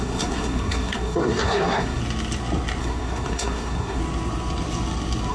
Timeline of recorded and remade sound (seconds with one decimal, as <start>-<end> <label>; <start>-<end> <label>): 0.0-2.0 remade; 2.0-2.8 recorded; 2.8-4.0 remade; 4.0-5.3 recorded